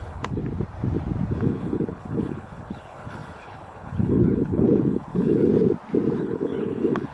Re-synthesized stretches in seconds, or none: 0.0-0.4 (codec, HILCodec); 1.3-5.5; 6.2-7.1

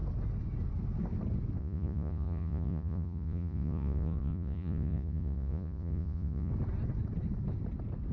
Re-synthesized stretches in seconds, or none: 1.6-6.5 (vocoder, Vocos)

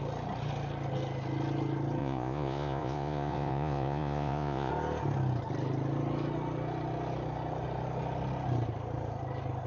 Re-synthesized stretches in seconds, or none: 2.0-4.7 (vocoder, Vocos)

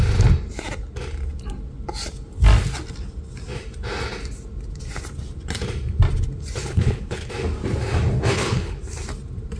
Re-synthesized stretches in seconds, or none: 6.6-7.3 (codec, HILCodec); 8.3-8.8

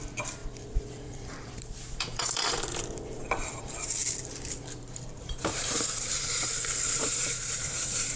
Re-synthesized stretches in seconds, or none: 0.0-8.2 (vocoder, BigVGAN v2)

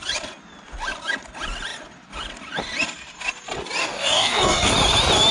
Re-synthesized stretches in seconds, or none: 3.8-4.7 (codec, DAC)

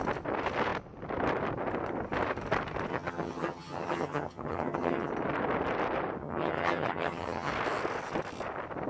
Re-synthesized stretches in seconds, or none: 2.9-5.1 (vocoder, HiFi-GAN); 6.2-7.5